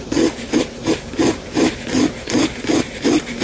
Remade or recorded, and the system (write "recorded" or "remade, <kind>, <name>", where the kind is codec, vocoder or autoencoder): recorded